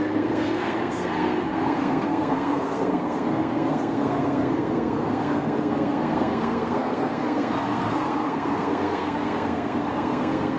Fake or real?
fake